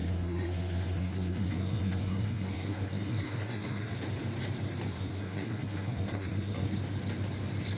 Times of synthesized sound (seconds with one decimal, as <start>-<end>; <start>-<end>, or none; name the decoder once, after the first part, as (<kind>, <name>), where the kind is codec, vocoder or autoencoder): 0.0-3.9 (codec, SNAC); 4.9-6.8